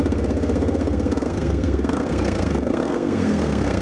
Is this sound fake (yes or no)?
yes